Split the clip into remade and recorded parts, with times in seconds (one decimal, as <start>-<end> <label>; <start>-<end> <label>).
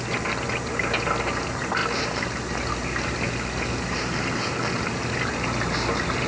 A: 0.0-6.3 recorded